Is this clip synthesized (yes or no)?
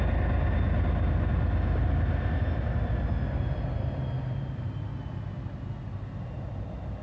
no